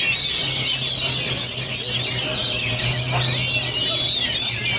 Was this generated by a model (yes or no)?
no